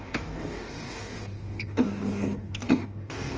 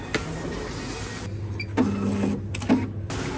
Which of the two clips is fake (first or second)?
first